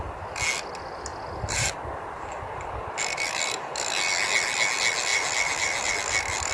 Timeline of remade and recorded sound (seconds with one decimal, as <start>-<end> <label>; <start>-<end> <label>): 0.0-1.1 recorded; 1.1-2.8 remade; 2.8-5.1 recorded; 5.1-5.9 remade; 5.9-6.5 recorded